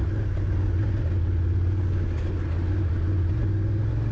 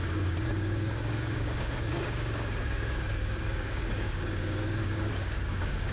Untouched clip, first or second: first